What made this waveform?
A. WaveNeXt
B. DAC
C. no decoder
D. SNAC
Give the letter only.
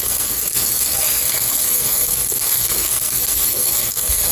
D